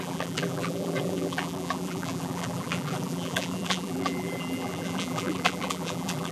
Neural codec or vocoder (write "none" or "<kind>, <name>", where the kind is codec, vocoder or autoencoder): vocoder, BigVGAN v2